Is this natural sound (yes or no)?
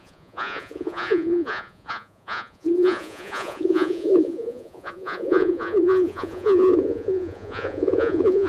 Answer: no